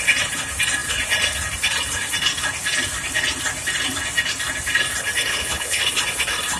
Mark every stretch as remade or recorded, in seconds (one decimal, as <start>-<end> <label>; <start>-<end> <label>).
0.0-5.3 recorded; 5.3-5.8 remade; 5.8-6.6 recorded

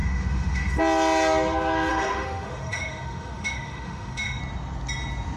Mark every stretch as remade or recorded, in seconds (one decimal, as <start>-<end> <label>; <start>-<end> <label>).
0.0-0.8 remade; 0.8-1.9 recorded; 1.9-4.4 remade; 4.4-5.4 recorded

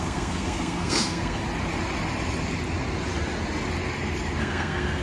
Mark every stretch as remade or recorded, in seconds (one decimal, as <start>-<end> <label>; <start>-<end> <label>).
0.0-1.4 remade; 1.4-4.4 recorded; 4.4-5.0 remade